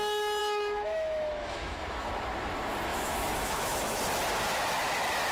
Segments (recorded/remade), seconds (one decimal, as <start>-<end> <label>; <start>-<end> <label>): 0.0-0.4 recorded; 0.4-2.1 remade; 2.1-2.9 recorded; 2.9-4.0 remade; 4.0-5.3 recorded